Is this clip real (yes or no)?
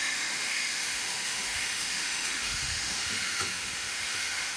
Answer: no